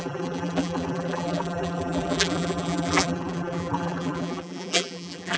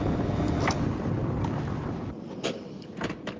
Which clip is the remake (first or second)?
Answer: first